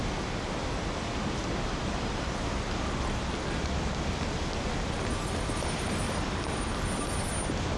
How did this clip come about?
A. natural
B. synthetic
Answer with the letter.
A